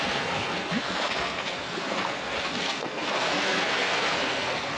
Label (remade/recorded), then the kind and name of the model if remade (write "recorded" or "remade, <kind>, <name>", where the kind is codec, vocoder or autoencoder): remade, codec, SNAC